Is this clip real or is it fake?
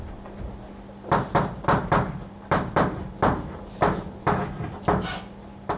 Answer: real